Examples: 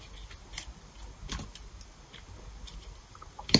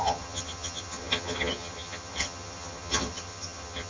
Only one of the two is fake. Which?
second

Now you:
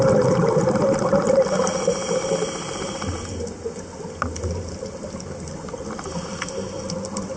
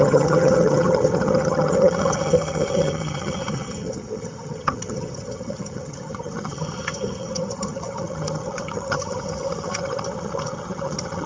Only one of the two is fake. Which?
second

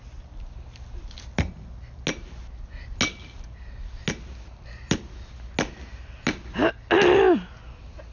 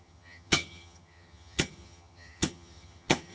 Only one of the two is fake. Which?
second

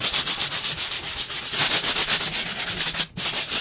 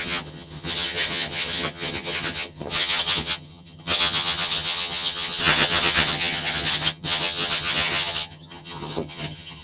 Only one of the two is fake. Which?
second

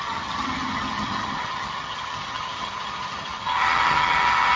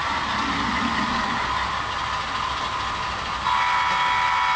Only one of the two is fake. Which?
first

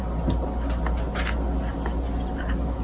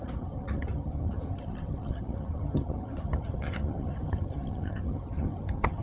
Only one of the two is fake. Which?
second